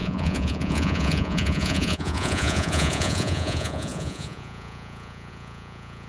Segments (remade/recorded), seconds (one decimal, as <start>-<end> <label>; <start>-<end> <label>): 0.0-6.1 remade